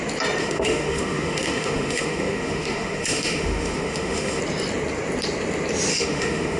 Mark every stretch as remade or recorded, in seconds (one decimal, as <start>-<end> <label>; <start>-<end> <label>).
0.0-0.4 recorded; 0.4-4.4 remade; 4.4-5.9 recorded; 5.9-6.6 remade